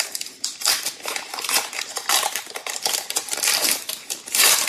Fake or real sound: fake